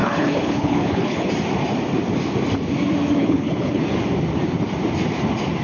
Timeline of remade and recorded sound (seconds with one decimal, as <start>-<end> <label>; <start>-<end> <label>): 0.0-1.3 remade; 1.3-3.2 recorded; 3.2-3.8 remade; 3.8-5.6 recorded